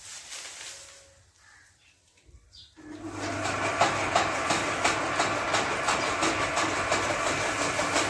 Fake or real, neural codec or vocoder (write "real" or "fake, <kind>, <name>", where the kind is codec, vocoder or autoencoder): real